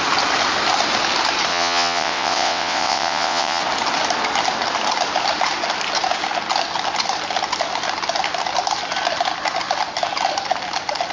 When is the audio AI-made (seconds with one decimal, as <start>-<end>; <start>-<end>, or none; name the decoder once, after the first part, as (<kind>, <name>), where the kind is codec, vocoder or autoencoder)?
1.5-3.6 (vocoder, WaveNeXt)